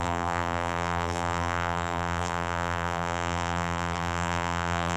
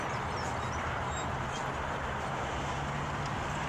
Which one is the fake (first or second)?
first